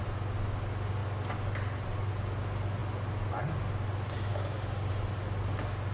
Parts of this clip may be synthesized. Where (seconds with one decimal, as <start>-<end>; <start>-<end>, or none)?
4.3-4.9